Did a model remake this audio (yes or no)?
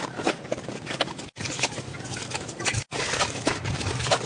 yes